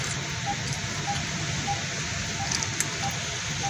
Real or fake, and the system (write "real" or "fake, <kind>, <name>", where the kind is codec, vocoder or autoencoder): real